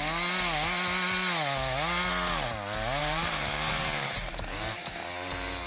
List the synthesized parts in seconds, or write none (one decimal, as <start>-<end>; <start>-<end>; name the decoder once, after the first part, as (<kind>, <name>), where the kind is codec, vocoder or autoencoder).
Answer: 3.0-4.9 (vocoder, BigVGAN v2)